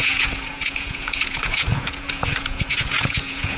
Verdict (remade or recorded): remade